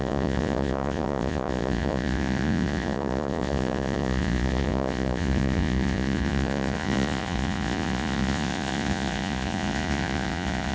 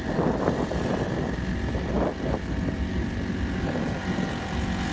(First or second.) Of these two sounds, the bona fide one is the second